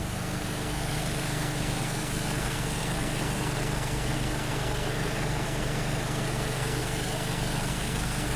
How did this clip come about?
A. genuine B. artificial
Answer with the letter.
B